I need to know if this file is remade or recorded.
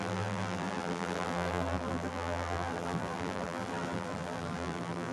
remade